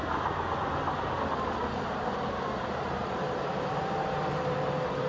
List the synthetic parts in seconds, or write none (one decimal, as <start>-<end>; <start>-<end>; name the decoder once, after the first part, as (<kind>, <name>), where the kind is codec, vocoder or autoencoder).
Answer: 1.6-5.1 (vocoder, BigVGAN v2)